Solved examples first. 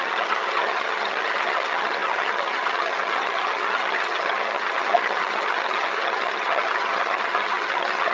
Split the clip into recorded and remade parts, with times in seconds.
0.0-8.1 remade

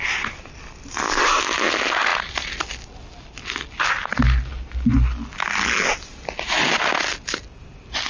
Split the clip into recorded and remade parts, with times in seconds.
0.0-8.1 recorded

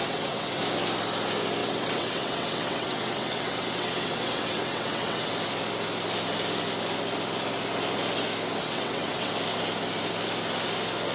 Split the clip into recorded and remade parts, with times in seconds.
0.0-0.6 remade; 0.6-1.6 recorded; 1.6-5.3 remade; 5.3-8.6 recorded; 8.6-9.3 remade; 9.3-11.1 recorded

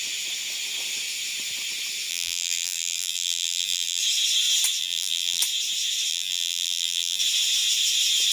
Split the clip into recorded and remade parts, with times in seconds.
0.0-2.1 recorded; 2.1-4.0 remade; 4.0-4.8 recorded; 4.8-5.4 remade; 5.4-6.1 recorded; 6.1-7.2 remade; 7.2-8.3 recorded

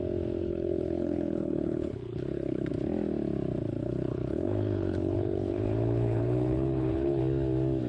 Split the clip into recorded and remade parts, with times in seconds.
0.0-0.4 recorded; 0.4-2.7 remade; 2.7-3.8 recorded; 3.8-7.2 remade; 7.2-7.9 recorded

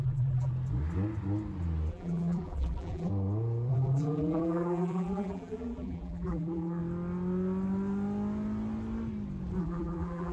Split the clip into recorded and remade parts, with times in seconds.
0.0-0.5 remade; 0.5-1.9 recorded; 1.9-3.1 remade; 3.1-3.7 recorded; 3.7-6.8 remade; 6.8-9.6 recorded; 9.6-10.3 remade

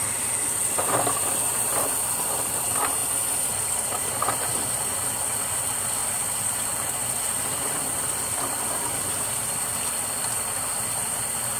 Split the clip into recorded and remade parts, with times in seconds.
0.0-11.6 recorded

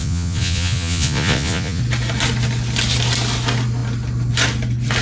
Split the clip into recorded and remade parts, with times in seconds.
0.0-1.8 remade; 1.8-5.0 recorded